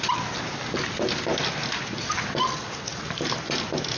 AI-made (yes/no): no